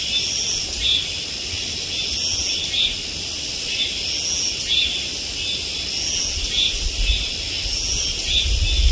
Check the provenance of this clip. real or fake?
real